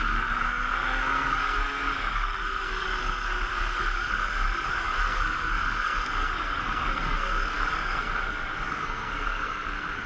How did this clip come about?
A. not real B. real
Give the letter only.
A